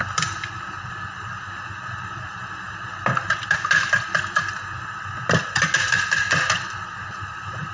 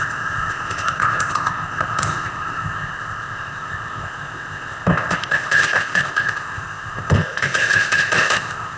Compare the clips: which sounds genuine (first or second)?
first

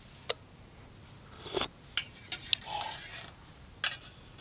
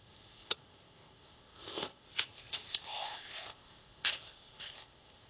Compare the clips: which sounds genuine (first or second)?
first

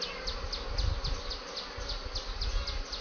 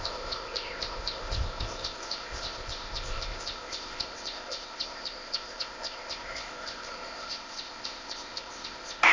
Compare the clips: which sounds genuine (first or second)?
first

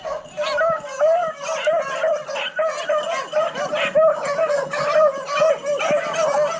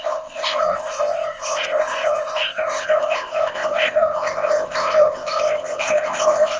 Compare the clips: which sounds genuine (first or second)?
first